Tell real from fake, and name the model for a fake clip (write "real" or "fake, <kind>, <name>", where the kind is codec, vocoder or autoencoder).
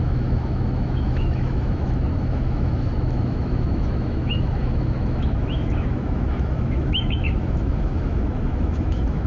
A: fake, autoencoder, DAC-VAE